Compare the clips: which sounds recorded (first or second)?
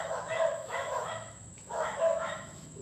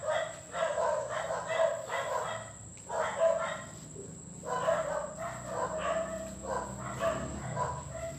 second